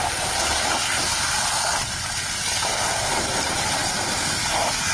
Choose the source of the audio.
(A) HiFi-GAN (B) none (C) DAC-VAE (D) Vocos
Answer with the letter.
B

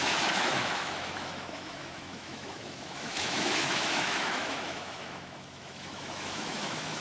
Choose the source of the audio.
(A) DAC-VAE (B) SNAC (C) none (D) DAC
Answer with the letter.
A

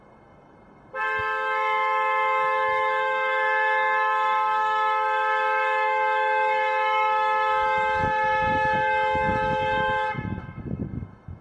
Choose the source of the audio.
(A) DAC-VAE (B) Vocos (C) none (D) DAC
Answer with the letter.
A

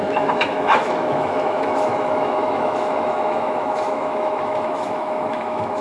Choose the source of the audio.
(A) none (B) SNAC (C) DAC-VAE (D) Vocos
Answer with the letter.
C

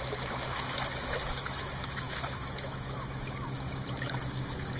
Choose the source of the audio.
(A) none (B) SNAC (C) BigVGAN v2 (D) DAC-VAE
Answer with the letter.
D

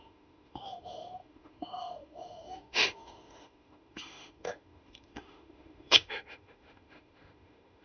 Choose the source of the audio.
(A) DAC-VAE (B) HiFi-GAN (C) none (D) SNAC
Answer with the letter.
A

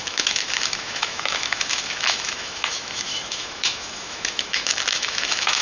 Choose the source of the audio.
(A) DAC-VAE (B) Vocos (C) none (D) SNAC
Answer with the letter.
A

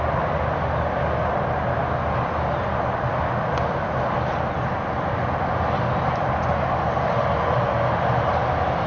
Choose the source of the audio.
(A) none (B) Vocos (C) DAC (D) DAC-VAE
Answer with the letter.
A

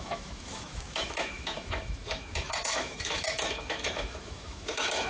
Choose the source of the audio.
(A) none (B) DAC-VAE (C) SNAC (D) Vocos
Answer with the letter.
B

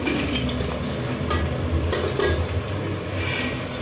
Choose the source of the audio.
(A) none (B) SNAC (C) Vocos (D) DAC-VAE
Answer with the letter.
A